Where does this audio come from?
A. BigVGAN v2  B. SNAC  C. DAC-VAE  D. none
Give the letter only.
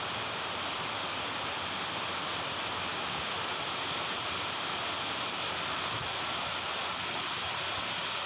D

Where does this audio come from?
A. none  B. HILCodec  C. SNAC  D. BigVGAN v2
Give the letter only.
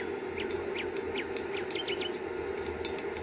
A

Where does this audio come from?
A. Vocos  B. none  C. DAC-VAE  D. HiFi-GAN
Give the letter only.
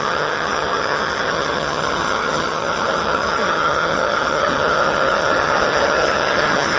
D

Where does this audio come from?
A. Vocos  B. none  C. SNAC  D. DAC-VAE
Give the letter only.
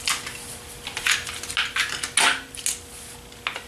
B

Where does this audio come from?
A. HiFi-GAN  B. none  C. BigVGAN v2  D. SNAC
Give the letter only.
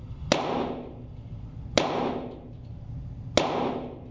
B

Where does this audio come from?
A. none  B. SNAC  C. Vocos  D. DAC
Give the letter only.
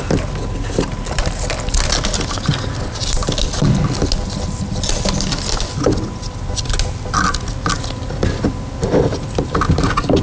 A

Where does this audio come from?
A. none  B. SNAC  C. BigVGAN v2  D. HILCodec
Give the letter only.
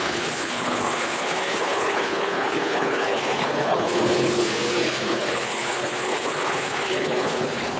D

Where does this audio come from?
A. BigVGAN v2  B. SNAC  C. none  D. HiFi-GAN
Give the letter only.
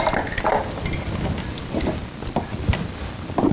C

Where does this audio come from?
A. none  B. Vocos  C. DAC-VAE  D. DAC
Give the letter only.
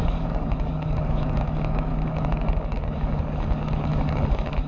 D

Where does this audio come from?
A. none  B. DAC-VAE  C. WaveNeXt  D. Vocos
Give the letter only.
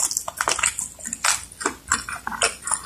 A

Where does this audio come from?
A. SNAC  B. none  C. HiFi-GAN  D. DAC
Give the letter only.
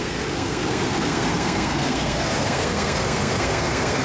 A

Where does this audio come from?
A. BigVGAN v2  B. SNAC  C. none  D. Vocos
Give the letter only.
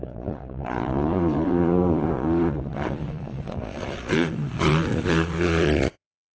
D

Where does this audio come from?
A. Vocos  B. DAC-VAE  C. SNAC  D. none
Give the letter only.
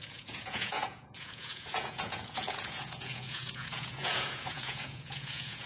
A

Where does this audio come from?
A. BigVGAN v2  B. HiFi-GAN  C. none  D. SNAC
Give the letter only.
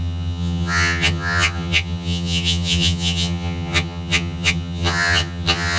B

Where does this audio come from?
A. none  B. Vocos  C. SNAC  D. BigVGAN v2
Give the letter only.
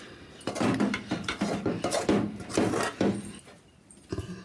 A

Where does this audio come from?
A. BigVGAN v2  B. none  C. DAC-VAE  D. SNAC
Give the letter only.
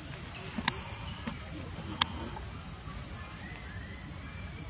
B